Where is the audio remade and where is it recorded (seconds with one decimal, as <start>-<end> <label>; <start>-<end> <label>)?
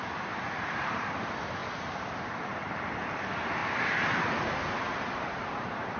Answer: 0.0-3.6 remade; 3.6-5.2 recorded; 5.2-6.0 remade